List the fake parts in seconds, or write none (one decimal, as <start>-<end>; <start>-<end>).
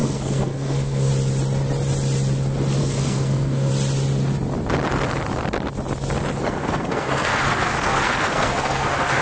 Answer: 0.0-1.1; 2.8-3.7; 6.4-9.2